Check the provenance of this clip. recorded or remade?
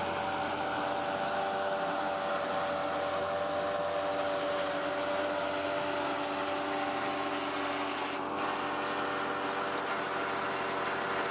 recorded